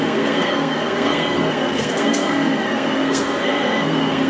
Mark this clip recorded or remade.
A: remade